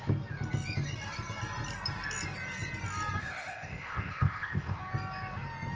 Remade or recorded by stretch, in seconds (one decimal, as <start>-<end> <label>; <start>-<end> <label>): 0.0-3.2 recorded; 3.2-4.8 remade; 4.8-5.8 recorded